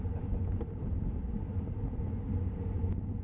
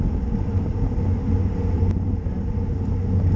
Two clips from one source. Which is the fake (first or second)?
first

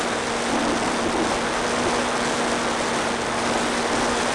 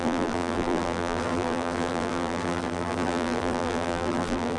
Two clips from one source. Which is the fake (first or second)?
second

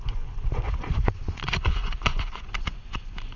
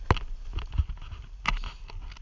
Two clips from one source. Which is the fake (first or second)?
first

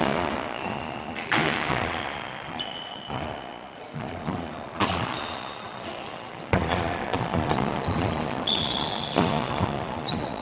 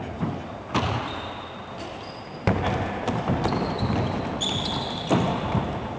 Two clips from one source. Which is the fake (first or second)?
first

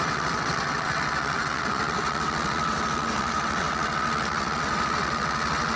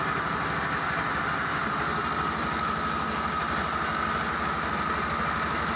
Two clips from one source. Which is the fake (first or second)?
first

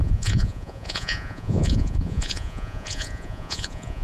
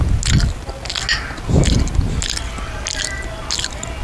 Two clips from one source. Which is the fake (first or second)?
first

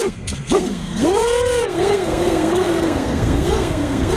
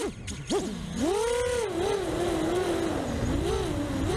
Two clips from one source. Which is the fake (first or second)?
first